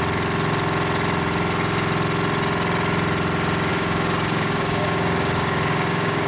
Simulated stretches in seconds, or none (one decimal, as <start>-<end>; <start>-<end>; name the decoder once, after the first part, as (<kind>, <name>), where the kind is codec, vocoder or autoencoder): 3.7-6.3 (codec, DAC)